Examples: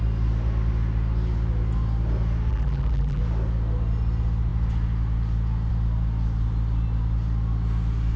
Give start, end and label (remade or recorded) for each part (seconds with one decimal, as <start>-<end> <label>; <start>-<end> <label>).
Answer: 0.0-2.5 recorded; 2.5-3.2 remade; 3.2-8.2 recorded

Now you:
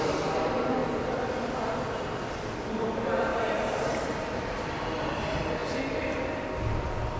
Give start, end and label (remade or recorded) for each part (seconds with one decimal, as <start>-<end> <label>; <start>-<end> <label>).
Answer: 0.0-0.8 remade; 0.8-1.8 recorded; 1.8-5.6 remade; 5.6-6.8 recorded; 6.8-7.2 remade

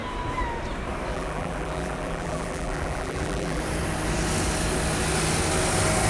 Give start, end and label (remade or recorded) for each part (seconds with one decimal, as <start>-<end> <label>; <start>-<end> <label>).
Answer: 0.0-1.1 recorded; 1.1-3.6 remade; 3.6-6.1 recorded

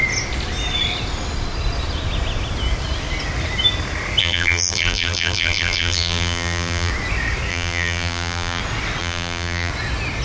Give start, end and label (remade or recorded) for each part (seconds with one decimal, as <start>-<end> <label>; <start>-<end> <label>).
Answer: 0.0-4.2 recorded; 4.2-6.9 remade; 6.9-7.5 recorded; 7.5-8.6 remade; 8.6-9.0 recorded; 9.0-9.7 remade; 9.7-10.2 recorded

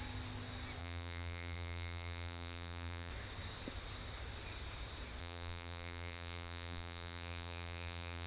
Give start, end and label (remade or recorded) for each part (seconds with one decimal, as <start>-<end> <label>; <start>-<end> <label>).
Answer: 0.0-0.8 recorded; 0.8-3.1 remade; 3.1-5.2 recorded; 5.2-8.3 remade